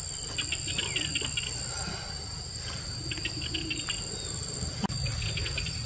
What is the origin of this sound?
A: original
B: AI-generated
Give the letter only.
A